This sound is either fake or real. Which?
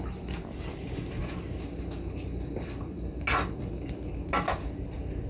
real